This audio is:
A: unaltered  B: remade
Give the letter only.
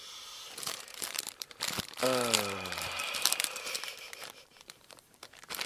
B